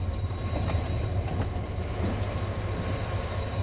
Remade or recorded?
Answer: remade